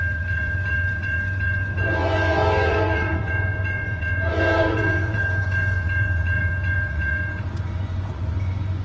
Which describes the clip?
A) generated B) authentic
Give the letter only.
A